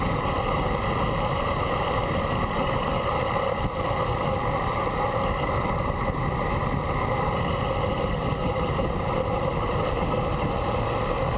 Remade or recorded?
recorded